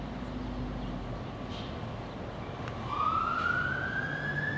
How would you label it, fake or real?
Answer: real